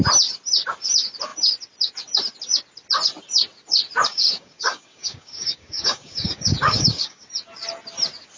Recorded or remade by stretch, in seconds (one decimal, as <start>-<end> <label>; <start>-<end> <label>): 0.0-4.1 recorded; 4.1-7.2 remade; 7.2-8.4 recorded